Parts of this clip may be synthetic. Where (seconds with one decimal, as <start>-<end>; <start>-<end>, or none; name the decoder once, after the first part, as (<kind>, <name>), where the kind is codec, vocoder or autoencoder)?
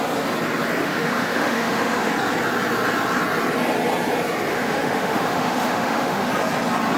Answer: 0.8-2.1 (autoencoder, DAC-VAE); 4.5-6.3